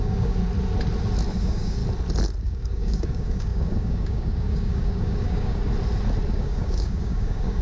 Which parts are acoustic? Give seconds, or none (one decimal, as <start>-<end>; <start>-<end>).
0.4-1.4; 1.8-2.4; 5.6-6.3